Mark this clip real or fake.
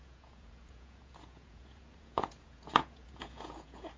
fake